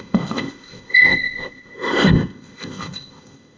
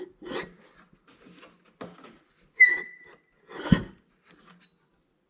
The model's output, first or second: first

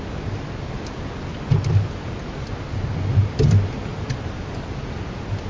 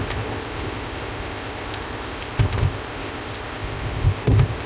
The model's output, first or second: second